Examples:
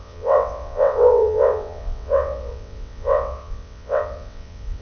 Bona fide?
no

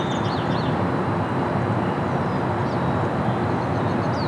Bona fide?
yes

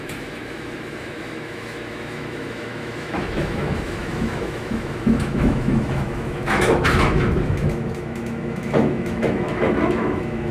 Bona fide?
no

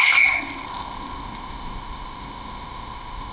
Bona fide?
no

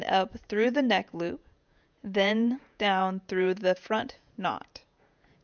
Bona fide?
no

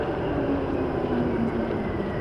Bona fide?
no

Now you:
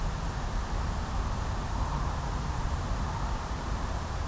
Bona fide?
yes